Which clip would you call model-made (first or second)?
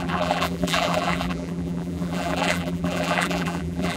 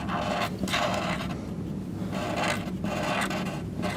first